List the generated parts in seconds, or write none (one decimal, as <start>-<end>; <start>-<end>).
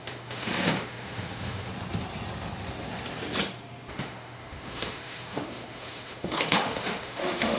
0.0-1.7; 3.9-7.6